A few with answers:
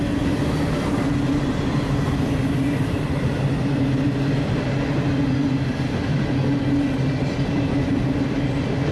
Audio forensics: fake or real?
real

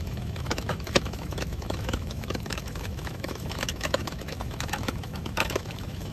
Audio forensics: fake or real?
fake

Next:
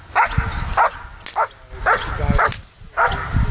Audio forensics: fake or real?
real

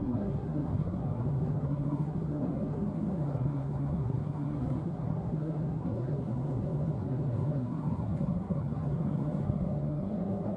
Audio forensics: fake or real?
fake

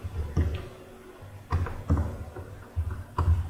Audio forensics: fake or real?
real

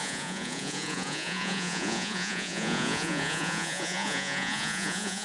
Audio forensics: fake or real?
fake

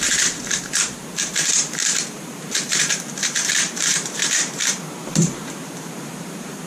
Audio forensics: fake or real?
fake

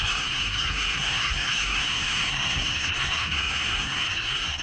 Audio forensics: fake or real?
fake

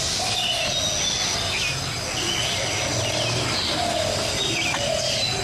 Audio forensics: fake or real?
real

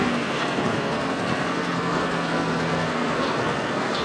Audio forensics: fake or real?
fake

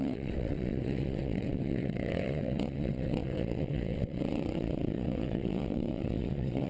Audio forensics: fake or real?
fake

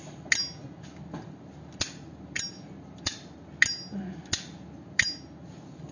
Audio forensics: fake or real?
real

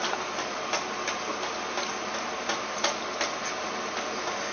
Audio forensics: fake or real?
real